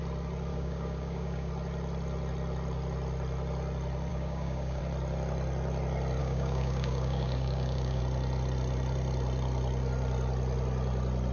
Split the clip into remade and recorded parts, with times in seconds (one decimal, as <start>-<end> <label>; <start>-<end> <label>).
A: 0.0-0.5 recorded; 0.5-1.5 remade; 1.5-4.1 recorded; 4.1-4.8 remade; 4.8-6.2 recorded; 6.2-8.0 remade; 8.0-11.3 recorded